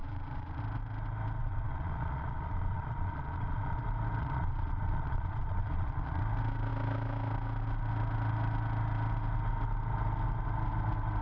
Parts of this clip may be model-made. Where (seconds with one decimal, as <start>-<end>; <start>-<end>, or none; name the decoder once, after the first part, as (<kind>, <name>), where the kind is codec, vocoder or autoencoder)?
0.0-0.6 (vocoder, Vocos); 1.4-3.8; 4.2-6.2